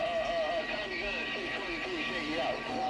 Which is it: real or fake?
real